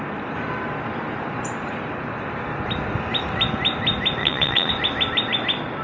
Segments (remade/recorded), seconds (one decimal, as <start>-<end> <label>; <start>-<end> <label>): 0.0-4.2 recorded; 4.2-4.7 remade; 4.7-5.8 recorded